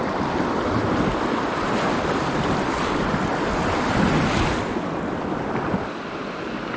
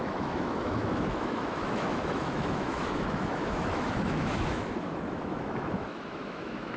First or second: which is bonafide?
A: first